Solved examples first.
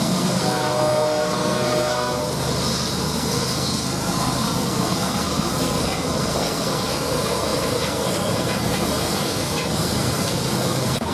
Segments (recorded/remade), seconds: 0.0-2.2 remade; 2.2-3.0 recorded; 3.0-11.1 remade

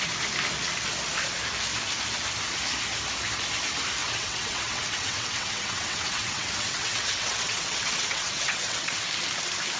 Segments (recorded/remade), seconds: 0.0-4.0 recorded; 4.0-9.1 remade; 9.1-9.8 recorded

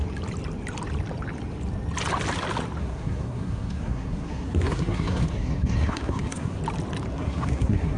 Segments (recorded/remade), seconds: 0.0-2.8 recorded; 2.8-6.6 remade; 6.6-7.1 recorded; 7.1-8.0 remade